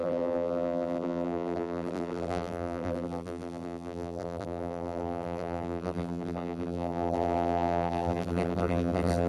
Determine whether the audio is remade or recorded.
remade